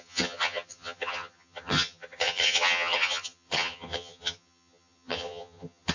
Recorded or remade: remade